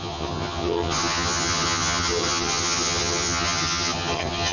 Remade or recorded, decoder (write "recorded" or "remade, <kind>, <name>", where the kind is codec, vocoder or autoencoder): remade, vocoder, HiFi-GAN